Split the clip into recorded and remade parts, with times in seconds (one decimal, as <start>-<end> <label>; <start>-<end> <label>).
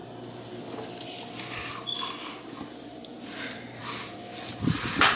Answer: 0.0-5.2 recorded